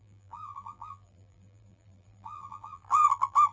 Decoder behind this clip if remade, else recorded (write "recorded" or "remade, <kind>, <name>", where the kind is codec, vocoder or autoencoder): remade, vocoder, BigVGAN v2